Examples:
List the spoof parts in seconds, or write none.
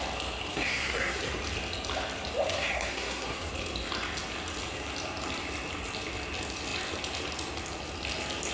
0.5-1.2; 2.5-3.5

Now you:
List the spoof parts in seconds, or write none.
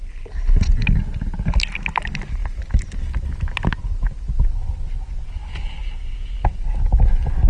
none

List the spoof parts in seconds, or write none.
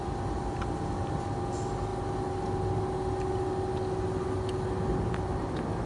none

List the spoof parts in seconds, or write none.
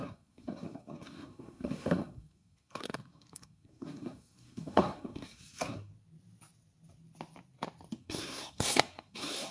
0.0-5.9; 8.0-9.5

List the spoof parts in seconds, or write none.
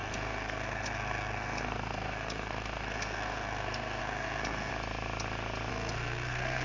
0.0-4.7; 5.7-6.6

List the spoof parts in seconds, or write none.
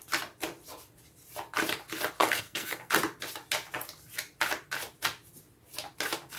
2.2-2.9